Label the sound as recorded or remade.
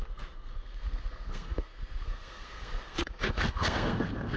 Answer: remade